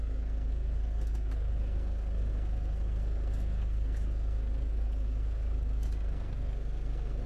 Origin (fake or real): fake